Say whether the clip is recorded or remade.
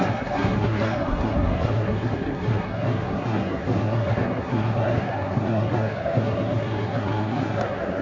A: remade